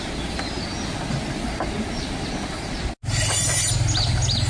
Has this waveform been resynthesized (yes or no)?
no